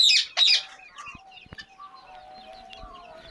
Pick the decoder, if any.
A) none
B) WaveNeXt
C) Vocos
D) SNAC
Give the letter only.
A